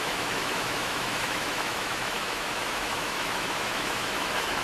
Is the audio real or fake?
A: fake